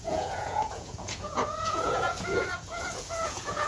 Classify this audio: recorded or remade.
remade